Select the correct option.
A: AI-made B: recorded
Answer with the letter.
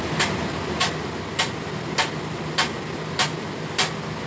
B